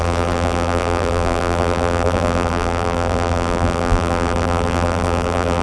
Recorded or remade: remade